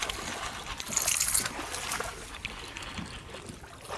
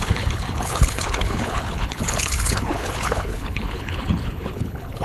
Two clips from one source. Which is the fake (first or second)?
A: second